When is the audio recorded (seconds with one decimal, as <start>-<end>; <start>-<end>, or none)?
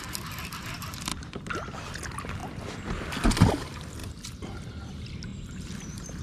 0.0-4.0; 4.7-5.3